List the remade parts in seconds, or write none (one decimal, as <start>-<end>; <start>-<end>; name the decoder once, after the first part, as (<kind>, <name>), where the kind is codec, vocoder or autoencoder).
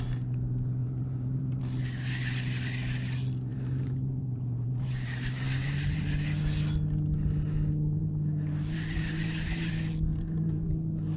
0.8-1.6 (vocoder, BigVGAN v2); 3.5-6.0; 8.0-9.7; 10.1-10.7